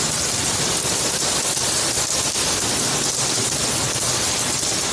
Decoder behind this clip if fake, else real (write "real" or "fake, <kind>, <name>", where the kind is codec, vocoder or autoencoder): real